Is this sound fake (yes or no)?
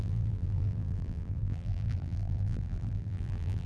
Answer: yes